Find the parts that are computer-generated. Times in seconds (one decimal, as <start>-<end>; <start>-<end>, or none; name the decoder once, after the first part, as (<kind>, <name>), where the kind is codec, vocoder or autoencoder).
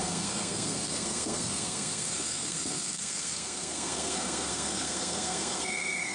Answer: 0.0-6.1 (codec, SNAC)